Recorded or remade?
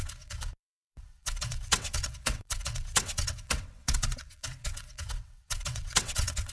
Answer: remade